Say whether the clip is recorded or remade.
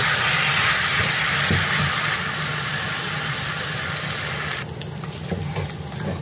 recorded